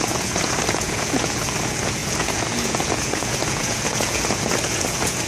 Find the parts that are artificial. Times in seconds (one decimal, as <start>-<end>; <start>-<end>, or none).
0.0-5.3